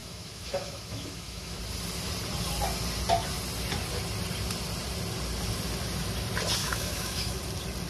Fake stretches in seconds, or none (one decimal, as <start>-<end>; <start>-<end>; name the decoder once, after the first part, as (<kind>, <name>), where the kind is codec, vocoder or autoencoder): 0.0-1.6 (autoencoder, DAC-VAE); 6.6-7.4